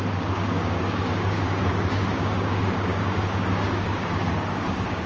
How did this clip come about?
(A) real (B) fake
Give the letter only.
B